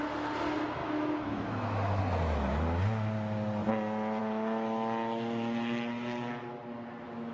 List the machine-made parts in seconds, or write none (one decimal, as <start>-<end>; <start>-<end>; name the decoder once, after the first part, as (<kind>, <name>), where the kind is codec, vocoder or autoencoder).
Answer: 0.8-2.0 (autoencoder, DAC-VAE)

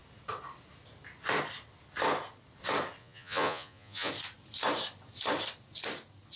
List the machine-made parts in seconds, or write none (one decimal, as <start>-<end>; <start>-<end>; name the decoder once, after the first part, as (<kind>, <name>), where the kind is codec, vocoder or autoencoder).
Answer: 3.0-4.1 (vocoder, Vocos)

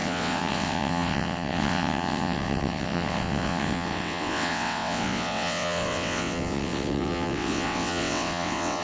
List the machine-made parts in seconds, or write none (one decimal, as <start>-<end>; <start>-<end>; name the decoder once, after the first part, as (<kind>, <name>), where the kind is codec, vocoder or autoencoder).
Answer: 0.0-8.8 (vocoder, WaveNeXt)

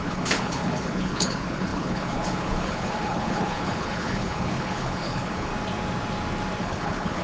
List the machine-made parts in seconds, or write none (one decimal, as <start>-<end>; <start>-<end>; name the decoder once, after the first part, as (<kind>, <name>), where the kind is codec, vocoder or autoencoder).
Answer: 0.0-5.5 (codec, HILCodec); 6.6-7.2

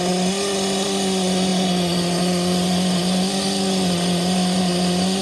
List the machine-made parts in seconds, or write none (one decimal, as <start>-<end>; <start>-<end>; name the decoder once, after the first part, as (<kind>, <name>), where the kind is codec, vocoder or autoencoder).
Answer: none

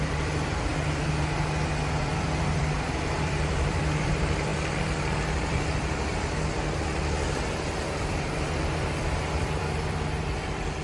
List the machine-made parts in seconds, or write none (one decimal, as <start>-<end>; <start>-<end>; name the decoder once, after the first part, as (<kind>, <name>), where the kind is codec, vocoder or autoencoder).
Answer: 0.0-0.7 (vocoder, BigVGAN v2); 1.7-10.8

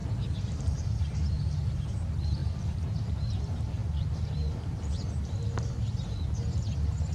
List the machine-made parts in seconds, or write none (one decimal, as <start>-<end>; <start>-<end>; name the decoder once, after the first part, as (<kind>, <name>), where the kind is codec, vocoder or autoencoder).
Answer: 3.8-5.1 (vocoder, BigVGAN v2)

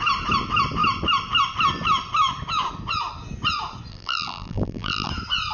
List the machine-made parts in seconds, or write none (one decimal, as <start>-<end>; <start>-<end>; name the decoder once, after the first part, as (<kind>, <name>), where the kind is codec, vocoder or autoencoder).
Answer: 3.9-5.1 (vocoder, BigVGAN v2)